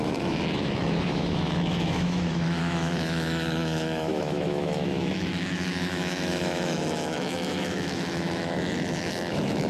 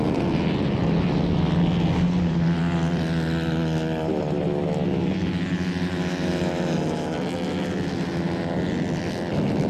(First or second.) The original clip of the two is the second